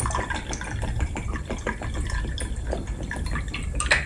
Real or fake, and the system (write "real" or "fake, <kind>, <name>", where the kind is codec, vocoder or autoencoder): real